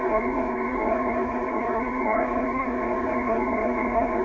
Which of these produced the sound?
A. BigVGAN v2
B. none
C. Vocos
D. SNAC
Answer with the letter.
D